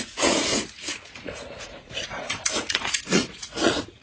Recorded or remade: remade